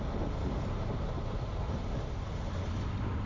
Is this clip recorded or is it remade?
recorded